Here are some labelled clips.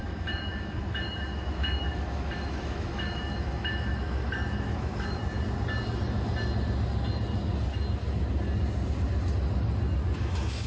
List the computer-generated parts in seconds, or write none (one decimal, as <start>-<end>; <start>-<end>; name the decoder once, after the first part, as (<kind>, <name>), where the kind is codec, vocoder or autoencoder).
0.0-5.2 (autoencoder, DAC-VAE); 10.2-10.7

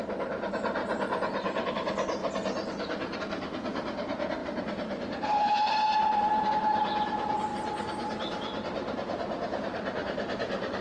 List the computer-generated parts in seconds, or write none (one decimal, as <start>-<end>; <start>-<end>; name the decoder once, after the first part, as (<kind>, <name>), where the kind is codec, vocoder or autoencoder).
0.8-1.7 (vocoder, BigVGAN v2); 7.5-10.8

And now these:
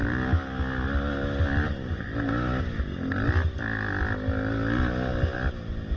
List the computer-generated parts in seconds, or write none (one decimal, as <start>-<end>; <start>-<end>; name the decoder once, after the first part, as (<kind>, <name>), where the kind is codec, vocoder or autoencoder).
none

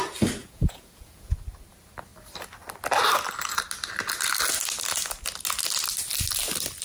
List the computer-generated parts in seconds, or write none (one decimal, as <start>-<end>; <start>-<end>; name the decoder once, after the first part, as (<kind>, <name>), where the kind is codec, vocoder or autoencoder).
0.4-1.3 (vocoder, Vocos)